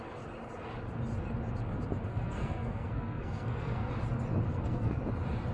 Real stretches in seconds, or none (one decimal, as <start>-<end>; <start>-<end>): 0.0-2.1; 3.9-4.5; 5.0-5.5